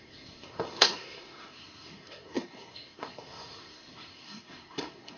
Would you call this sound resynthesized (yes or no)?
yes